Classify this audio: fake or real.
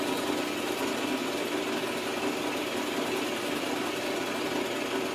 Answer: real